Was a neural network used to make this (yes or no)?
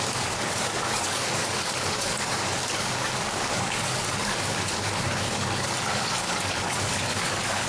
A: yes